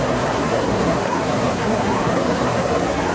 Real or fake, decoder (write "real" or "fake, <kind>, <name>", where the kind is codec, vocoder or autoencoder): fake, codec, SNAC